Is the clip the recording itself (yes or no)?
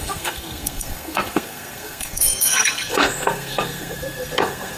no